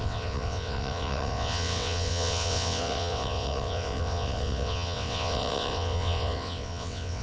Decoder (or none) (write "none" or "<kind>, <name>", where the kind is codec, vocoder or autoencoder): vocoder, WaveNeXt